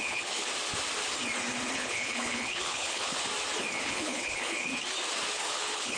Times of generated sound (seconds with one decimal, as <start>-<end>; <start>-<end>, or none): 0.0-0.5; 1.7-3.3; 3.8-4.7; 5.3-6.0